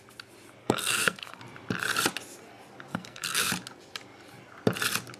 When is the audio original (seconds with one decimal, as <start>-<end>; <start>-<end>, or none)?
0.0-0.6; 1.4-2.9; 3.5-5.2